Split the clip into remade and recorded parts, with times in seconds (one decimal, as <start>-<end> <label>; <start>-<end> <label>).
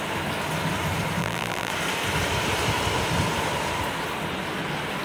0.0-1.2 recorded; 1.2-1.7 remade; 1.7-5.0 recorded